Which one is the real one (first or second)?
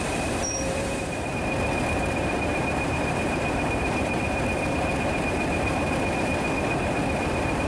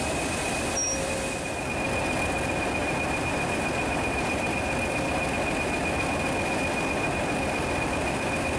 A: second